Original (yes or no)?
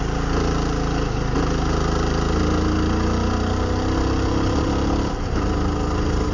yes